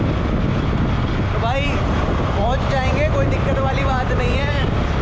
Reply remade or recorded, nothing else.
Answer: recorded